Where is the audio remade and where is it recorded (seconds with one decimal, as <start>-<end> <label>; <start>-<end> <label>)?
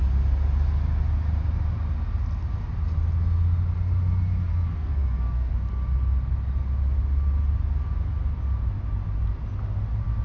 0.0-4.5 recorded; 4.5-5.5 remade; 5.5-10.2 recorded